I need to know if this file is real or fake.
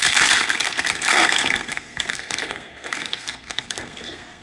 fake